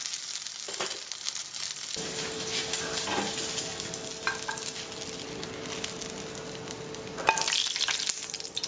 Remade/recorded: recorded